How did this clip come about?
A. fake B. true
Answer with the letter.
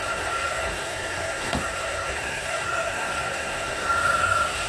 A